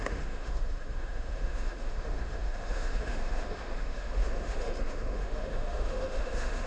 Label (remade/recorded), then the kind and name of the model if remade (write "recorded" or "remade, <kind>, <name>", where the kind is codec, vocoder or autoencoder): remade, autoencoder, DAC-VAE